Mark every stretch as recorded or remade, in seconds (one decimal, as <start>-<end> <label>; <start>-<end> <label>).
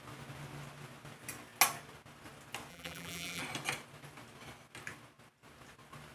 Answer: 0.0-2.7 recorded; 2.7-3.4 remade; 3.4-6.1 recorded